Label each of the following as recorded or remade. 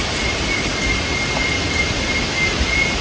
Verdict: recorded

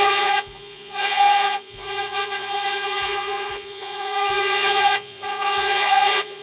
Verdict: remade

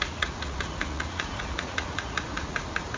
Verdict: remade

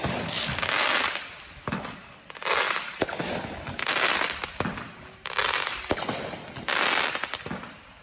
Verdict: recorded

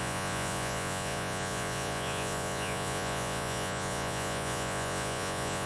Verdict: remade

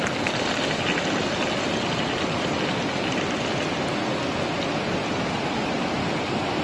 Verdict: recorded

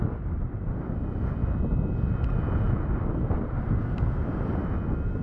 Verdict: recorded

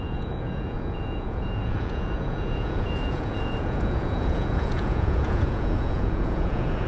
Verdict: remade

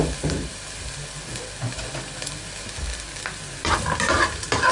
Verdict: recorded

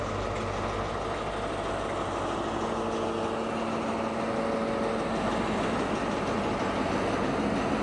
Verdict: recorded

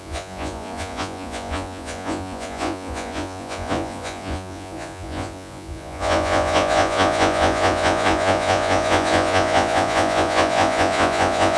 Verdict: remade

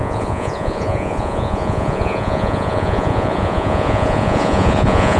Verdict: remade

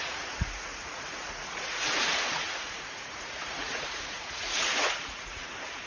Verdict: remade